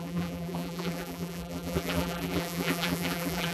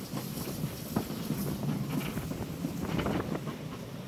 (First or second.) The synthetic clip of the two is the first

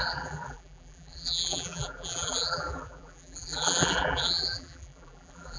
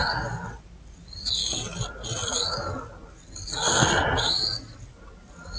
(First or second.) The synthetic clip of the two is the first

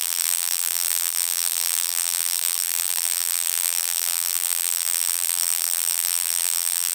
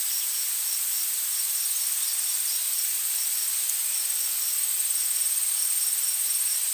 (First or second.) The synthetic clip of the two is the first